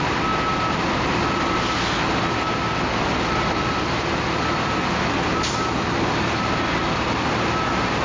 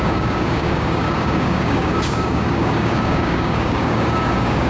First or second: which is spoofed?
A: second